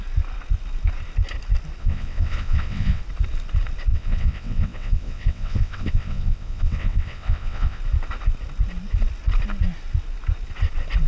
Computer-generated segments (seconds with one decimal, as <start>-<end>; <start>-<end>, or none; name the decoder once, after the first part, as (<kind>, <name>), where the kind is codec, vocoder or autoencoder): 1.8-3.0 (vocoder, WaveNeXt); 3.9-7.8